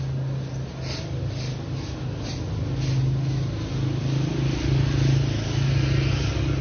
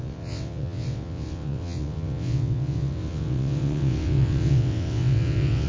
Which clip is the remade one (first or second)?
second